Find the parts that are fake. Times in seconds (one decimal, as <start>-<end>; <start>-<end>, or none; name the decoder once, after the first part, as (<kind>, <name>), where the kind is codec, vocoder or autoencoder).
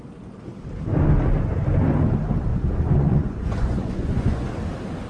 2.5-4.5 (vocoder, Vocos)